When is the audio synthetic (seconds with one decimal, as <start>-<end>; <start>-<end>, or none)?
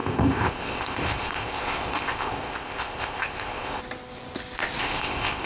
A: 0.0-3.8; 4.8-5.5